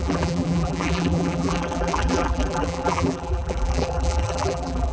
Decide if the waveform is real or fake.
fake